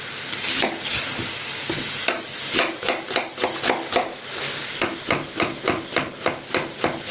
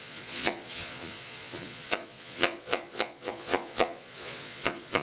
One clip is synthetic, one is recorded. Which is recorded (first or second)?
first